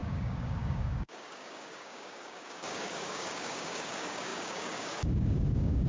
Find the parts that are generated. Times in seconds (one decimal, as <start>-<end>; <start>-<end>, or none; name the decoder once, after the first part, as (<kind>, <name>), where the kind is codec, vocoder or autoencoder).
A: 0.0-5.9 (codec, DAC)